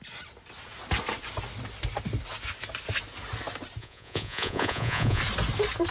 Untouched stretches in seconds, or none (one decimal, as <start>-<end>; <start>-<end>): 0.0-3.8; 5.2-5.9